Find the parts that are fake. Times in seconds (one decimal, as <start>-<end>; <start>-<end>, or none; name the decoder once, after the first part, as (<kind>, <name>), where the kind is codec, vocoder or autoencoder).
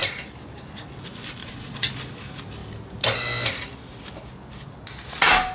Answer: 1.4-1.9 (vocoder, Vocos)